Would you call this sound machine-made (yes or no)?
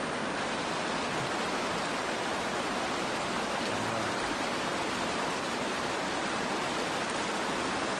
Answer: no